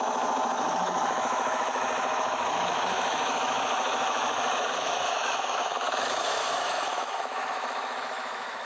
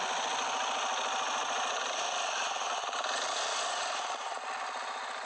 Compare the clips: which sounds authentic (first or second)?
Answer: second